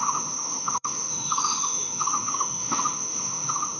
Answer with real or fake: fake